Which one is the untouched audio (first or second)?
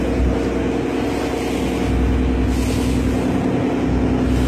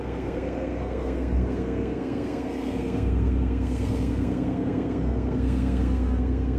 first